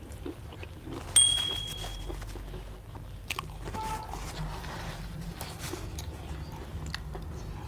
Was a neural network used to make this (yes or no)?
no